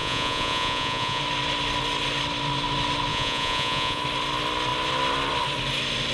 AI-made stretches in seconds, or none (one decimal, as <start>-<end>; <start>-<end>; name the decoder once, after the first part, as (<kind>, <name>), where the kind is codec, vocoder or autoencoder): 0.0-1.2 (vocoder, Vocos); 3.1-4.0